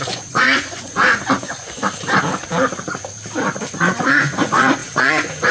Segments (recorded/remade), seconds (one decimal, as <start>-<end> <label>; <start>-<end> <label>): 0.0-1.8 remade; 1.8-4.1 recorded; 4.1-5.5 remade

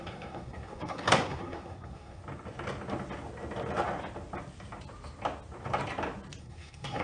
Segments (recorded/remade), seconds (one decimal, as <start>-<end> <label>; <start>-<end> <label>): 0.0-2.2 remade; 2.2-6.4 recorded; 6.4-7.0 remade

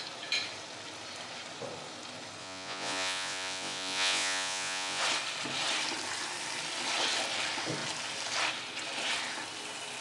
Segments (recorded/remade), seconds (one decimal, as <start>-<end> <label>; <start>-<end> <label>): 0.0-2.4 recorded; 2.4-5.0 remade; 5.0-10.0 recorded

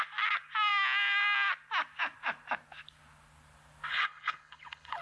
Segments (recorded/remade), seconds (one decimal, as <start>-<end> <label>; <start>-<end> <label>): 0.0-3.9 recorded; 3.9-5.0 remade

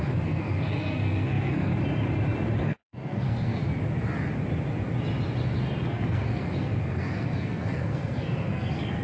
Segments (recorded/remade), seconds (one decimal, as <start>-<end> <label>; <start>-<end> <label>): 0.0-1.7 remade; 1.7-2.6 recorded; 2.6-3.6 remade; 3.6-5.9 recorded; 5.9-9.0 remade

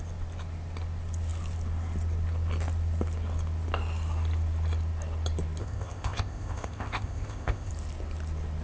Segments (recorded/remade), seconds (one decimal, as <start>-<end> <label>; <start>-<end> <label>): 0.0-5.6 recorded; 5.6-7.7 remade; 7.7-8.6 recorded